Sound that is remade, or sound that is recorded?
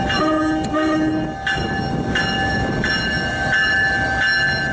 recorded